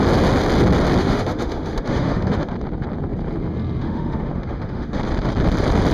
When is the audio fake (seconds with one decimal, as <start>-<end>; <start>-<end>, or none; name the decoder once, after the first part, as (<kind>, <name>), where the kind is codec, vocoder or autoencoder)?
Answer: 1.0-2.5 (autoencoder, DAC-VAE); 3.8-5.0